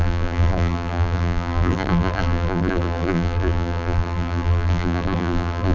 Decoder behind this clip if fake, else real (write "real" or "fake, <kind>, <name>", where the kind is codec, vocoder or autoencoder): fake, vocoder, BigVGAN v2